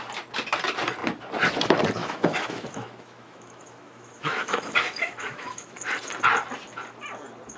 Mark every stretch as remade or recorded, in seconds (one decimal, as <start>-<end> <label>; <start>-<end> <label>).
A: 0.0-2.0 recorded; 2.0-5.8 remade; 5.8-7.6 recorded